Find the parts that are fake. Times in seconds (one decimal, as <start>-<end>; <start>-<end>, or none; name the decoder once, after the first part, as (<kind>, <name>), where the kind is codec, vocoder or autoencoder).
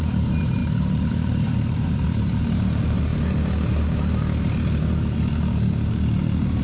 0.0-0.6 (vocoder, BigVGAN v2); 1.1-3.1